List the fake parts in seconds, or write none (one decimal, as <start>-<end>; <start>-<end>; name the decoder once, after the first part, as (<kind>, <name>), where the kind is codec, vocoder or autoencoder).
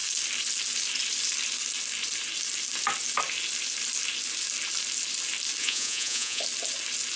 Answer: 5.6-6.4 (vocoder, Vocos)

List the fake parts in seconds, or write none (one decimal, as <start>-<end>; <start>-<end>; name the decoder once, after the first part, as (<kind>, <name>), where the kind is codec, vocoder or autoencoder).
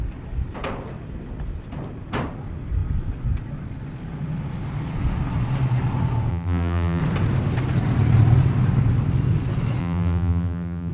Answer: 6.3-7.0 (vocoder, BigVGAN v2); 9.8-10.9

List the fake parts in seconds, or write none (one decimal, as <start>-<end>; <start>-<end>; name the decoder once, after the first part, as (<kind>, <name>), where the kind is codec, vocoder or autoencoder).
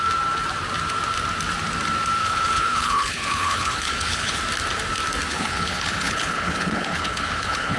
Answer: 2.2-4.4 (codec, HILCodec); 5.3-7.8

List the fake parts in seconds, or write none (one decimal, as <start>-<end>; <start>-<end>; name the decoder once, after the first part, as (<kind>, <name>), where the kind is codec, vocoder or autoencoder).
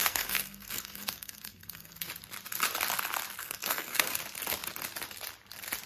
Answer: 0.0-2.1 (codec, SNAC); 3.4-4.1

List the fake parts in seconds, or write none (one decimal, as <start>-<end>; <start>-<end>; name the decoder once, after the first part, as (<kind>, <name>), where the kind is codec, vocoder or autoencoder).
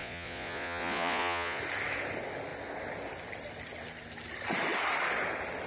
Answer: 0.0-1.6 (vocoder, Vocos)